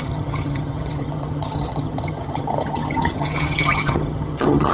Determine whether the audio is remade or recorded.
remade